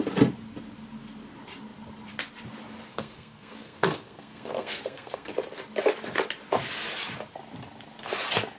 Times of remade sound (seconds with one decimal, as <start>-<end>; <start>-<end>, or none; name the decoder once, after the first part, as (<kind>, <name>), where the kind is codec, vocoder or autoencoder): 2.9-5.3 (codec, SNAC)